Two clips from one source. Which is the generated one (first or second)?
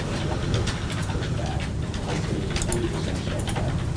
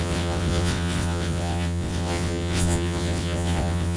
second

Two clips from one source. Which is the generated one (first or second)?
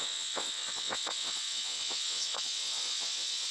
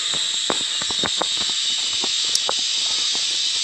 first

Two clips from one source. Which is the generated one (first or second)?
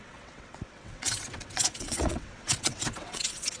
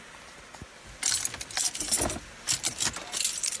first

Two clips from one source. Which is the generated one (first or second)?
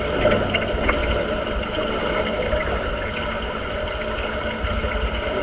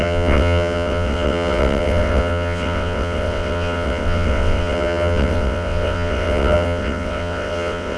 second